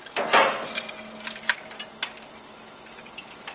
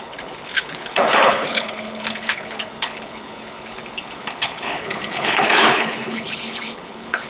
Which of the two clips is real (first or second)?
first